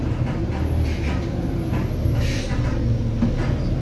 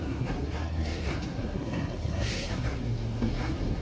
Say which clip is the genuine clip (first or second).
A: first